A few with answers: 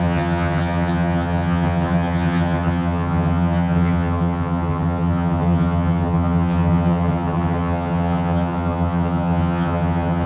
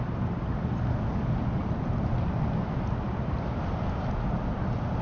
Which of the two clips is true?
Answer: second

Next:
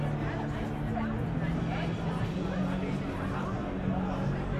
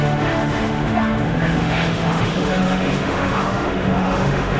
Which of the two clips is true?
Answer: first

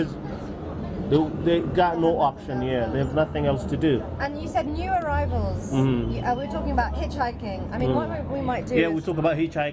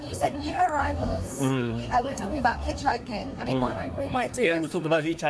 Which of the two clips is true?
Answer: first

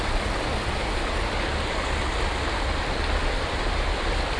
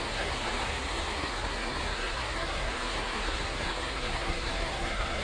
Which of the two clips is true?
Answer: first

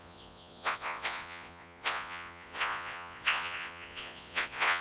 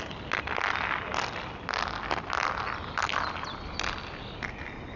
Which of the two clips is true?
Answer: second